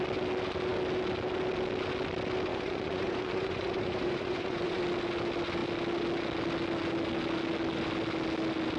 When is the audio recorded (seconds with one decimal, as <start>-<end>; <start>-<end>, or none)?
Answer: 0.0-2.5; 4.8-8.8